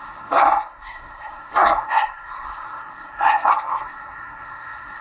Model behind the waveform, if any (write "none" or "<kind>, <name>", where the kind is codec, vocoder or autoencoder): codec, SNAC